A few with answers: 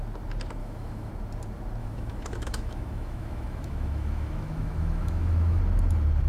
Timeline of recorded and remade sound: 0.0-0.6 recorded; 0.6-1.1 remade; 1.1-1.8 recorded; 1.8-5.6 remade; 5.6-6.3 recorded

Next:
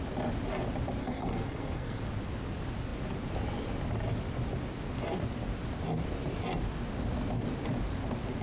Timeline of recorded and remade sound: 0.0-1.0 recorded; 1.0-2.0 remade; 2.0-8.4 recorded

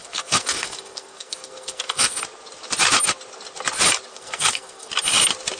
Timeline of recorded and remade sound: 0.0-2.2 remade; 2.2-4.1 recorded; 4.1-4.9 remade; 4.9-5.6 recorded

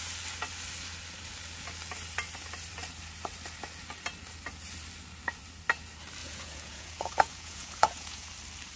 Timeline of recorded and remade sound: 0.0-6.2 recorded; 6.2-8.3 remade; 8.3-8.8 recorded

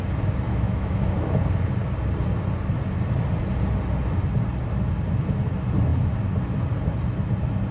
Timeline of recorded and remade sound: 0.0-0.5 recorded; 0.5-1.3 remade; 1.3-7.7 recorded